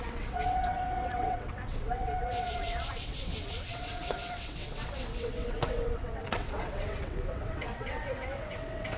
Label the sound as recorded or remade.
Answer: remade